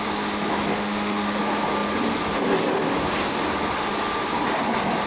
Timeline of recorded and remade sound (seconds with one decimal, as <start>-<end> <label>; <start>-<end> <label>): 0.0-0.7 recorded; 0.7-1.4 remade; 1.4-5.1 recorded